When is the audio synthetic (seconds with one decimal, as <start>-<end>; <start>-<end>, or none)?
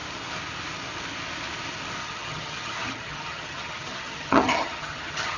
2.0-5.4